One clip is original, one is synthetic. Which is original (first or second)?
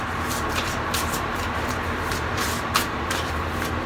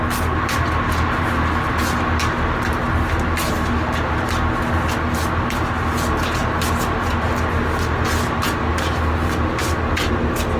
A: second